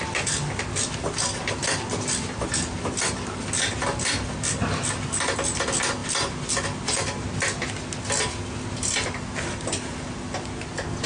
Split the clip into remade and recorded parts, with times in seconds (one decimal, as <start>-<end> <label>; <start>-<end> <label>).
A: 0.0-11.1 recorded